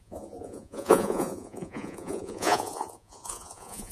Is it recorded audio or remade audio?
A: remade